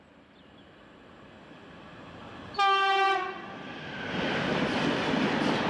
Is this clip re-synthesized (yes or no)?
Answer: no